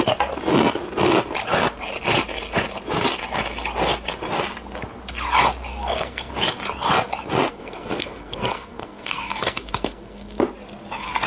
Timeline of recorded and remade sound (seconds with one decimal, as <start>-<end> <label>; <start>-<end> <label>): 0.0-5.7 recorded; 5.7-6.3 remade; 6.3-7.5 recorded; 7.5-10.4 remade; 10.4-11.3 recorded